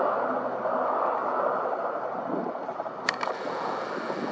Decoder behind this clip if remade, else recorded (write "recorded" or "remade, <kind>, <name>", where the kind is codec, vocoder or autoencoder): recorded